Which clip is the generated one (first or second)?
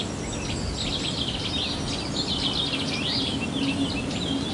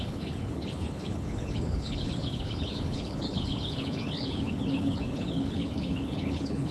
second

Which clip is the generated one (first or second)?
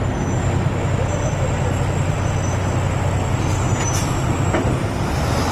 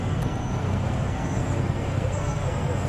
second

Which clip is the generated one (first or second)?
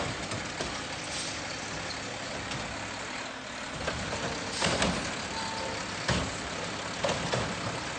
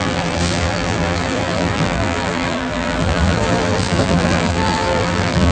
second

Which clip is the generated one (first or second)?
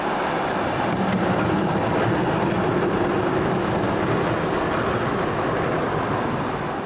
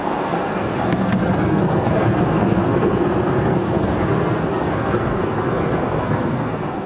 second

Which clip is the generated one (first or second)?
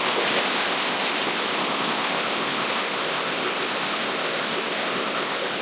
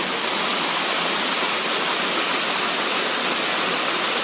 first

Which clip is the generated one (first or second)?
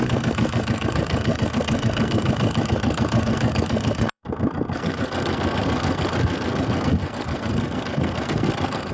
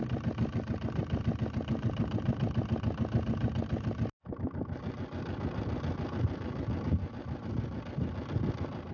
first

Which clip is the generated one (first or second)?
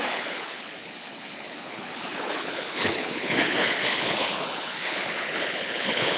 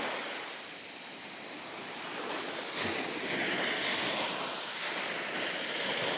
first